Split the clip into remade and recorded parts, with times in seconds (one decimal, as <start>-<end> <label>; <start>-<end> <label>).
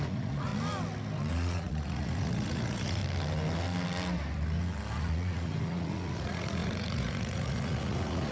0.0-0.5 remade; 0.5-1.3 recorded; 1.3-3.0 remade; 3.0-5.0 recorded; 5.0-8.3 remade